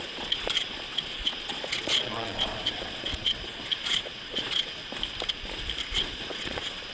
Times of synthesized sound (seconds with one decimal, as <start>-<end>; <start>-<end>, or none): 0.0-4.8; 5.9-6.9